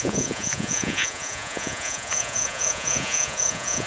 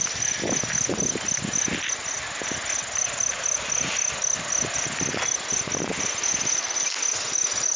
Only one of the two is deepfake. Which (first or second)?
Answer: first